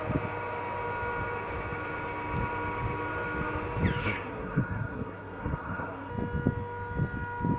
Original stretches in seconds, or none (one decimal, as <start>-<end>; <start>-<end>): 0.0-4.0; 6.1-7.6